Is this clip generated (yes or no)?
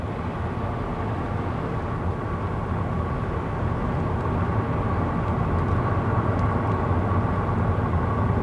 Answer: no